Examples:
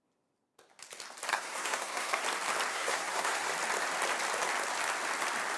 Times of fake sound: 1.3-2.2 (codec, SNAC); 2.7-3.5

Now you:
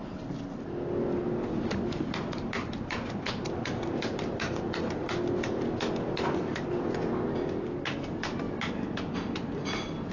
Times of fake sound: 4.1-4.9 (vocoder, BigVGAN v2)

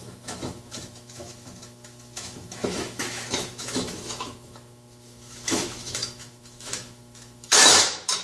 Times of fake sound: 0.0-8.2 (autoencoder, DAC-VAE)

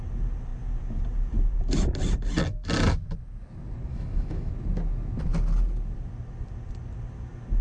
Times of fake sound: 3.9-4.5 (autoencoder, DAC-VAE)

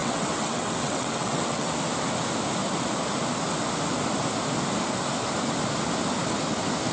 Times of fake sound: 0.0-1.7 (vocoder, WaveNeXt)